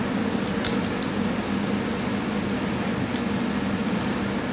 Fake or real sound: real